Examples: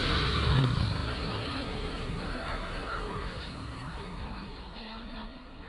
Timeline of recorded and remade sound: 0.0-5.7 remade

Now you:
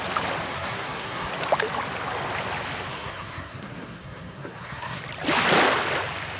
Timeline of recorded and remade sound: 0.0-0.5 recorded; 0.5-1.3 remade; 1.3-2.9 recorded; 2.9-5.0 remade; 5.0-6.4 recorded